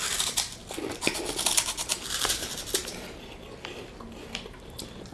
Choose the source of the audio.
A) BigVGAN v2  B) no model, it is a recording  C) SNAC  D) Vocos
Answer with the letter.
B